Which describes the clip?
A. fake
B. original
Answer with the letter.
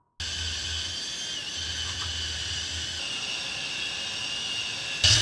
B